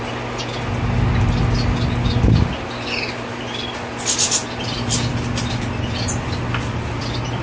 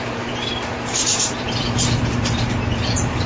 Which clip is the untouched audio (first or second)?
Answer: first